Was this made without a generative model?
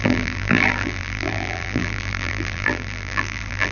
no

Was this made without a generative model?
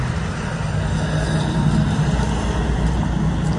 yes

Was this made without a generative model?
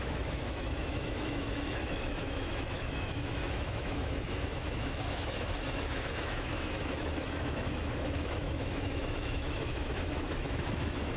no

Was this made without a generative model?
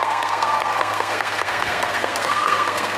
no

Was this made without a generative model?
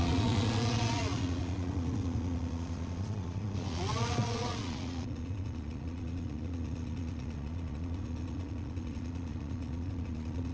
no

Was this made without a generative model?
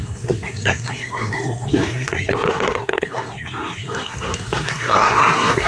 no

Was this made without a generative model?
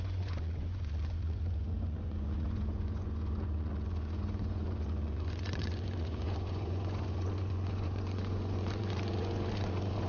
no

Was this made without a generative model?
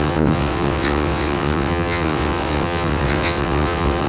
no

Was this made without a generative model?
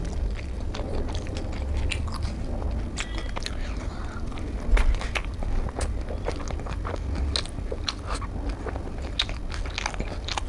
yes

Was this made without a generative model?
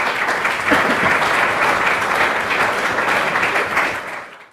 yes